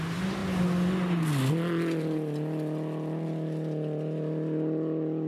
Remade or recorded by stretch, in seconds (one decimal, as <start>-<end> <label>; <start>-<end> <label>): 0.0-5.3 recorded